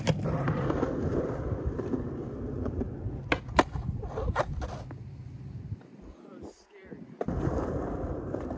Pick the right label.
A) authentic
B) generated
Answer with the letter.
A